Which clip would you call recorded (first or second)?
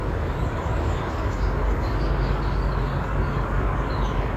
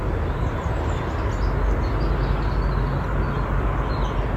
second